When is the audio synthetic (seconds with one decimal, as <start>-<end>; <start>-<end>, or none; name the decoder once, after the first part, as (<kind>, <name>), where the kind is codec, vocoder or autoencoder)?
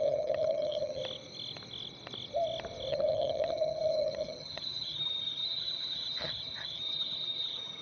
0.0-1.0 (vocoder, HiFi-GAN); 2.9-7.8